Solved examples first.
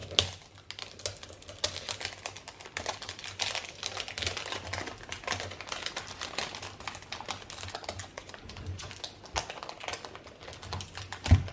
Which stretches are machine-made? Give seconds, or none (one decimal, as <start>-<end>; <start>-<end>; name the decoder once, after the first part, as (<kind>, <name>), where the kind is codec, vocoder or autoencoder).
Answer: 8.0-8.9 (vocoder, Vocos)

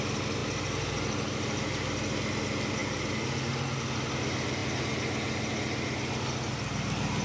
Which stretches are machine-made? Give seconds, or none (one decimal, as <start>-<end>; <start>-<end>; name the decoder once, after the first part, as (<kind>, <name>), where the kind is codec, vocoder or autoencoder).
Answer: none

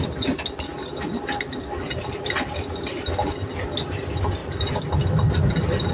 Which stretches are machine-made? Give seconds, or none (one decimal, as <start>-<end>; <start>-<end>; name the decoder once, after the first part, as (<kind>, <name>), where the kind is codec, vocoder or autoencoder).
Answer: none

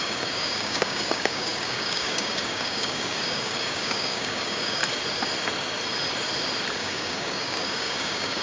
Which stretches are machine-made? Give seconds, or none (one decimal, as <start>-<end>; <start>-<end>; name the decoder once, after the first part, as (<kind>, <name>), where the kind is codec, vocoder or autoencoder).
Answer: 0.0-4.8 (codec, DAC); 6.7-8.4

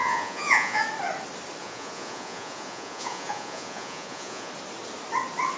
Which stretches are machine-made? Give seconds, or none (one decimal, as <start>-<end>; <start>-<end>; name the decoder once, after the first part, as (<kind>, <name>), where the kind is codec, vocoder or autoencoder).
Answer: 0.0-0.8 (vocoder, Vocos); 1.6-4.5